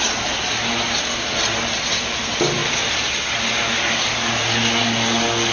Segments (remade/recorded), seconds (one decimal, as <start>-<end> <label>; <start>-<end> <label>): 0.0-5.5 recorded